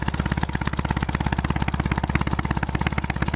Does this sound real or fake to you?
real